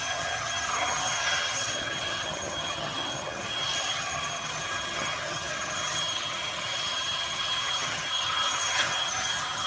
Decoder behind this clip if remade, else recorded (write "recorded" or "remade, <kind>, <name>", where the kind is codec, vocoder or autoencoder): remade, vocoder, HiFi-GAN